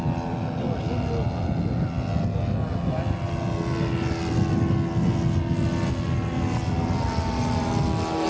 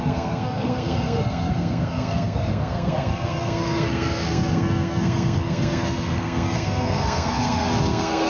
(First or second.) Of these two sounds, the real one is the first